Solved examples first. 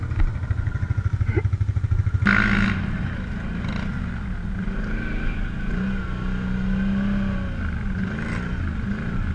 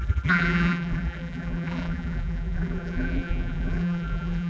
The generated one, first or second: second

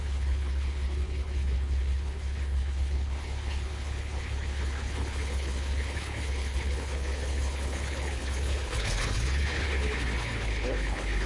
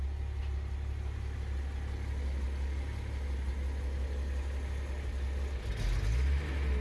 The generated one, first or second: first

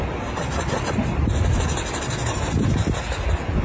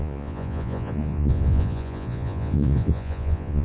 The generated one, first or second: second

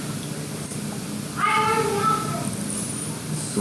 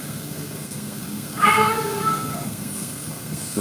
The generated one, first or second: second